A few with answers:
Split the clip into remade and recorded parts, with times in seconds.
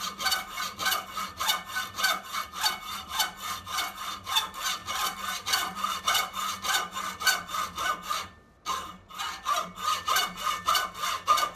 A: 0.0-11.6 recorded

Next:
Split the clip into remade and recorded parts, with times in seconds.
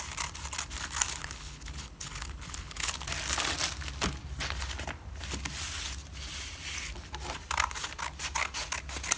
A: 0.0-1.2 recorded; 1.2-2.9 remade; 2.9-9.2 recorded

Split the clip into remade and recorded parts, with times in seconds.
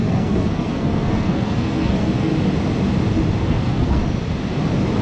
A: 0.0-2.3 remade; 2.3-3.4 recorded; 3.4-4.0 remade; 4.0-5.0 recorded